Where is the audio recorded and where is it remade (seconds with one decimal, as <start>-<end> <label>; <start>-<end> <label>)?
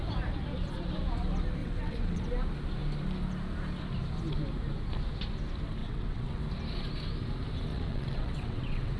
0.0-1.6 recorded; 1.6-2.2 remade; 2.2-5.8 recorded; 5.8-6.4 remade; 6.4-7.7 recorded; 7.7-9.0 remade